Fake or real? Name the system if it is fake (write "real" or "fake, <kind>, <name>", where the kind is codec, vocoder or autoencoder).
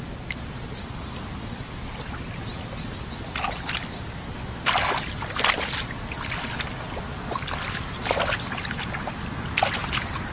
real